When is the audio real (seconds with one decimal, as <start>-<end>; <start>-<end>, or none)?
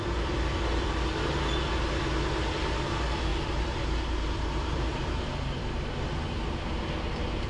0.0-3.3; 6.1-7.5